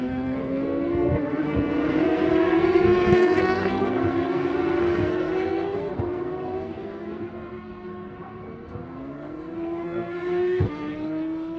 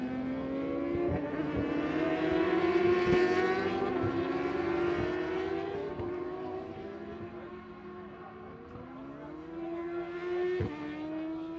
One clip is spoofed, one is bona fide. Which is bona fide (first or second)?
second